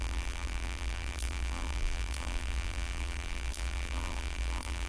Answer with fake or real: fake